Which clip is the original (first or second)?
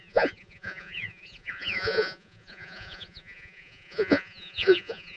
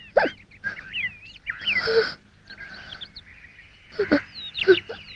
second